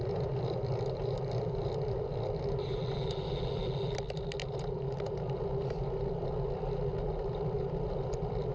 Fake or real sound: fake